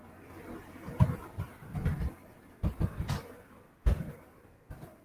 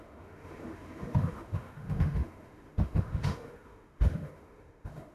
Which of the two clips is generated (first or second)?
second